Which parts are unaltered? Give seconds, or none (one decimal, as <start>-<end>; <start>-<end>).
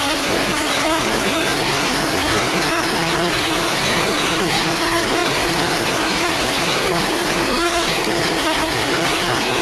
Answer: none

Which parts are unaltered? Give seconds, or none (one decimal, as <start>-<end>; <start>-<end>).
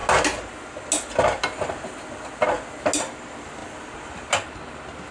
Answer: 0.0-5.1